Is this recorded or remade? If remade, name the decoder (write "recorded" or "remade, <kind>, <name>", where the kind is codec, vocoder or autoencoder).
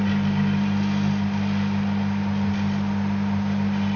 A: recorded